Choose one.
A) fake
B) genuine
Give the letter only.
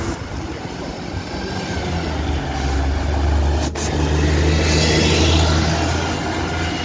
B